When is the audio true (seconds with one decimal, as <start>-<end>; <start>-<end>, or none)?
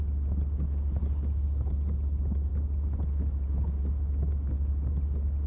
0.0-5.5